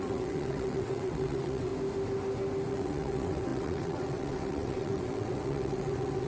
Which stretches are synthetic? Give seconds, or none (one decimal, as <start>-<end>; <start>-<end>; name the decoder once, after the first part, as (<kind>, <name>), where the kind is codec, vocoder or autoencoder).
0.0-1.7 (vocoder, WaveNeXt); 2.7-6.3